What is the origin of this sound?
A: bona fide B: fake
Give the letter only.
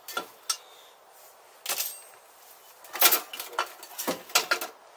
A